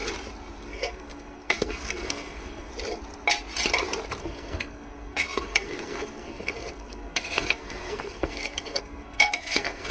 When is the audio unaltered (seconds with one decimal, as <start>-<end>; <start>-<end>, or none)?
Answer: 0.0-0.6; 2.7-4.2